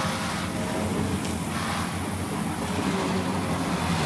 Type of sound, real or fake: real